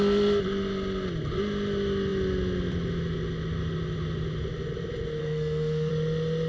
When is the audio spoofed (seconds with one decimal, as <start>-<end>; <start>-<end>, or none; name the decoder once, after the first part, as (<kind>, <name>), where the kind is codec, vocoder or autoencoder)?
5.2-5.9 (codec, SNAC)